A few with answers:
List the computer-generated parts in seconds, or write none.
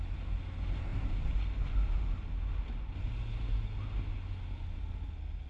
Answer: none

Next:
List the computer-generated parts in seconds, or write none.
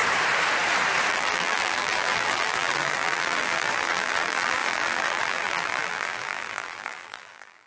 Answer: 1.1-7.7 (vocoder, BigVGAN v2)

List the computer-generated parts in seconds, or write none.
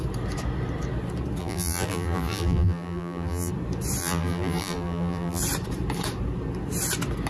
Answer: 1.4-3.5 (vocoder, BigVGAN v2); 4.0-5.4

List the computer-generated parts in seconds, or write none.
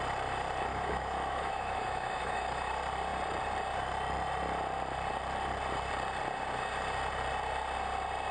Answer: 0.7-2.7 (autoencoder, DAC-VAE)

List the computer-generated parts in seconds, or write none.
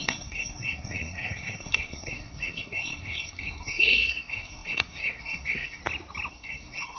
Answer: 0.0-5.8 (codec, SNAC); 6.3-7.0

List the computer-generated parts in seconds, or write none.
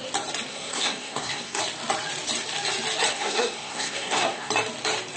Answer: 0.5-1.6 (codec, SNAC); 3.1-4.5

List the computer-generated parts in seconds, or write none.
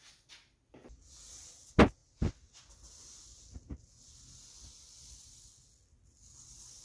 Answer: none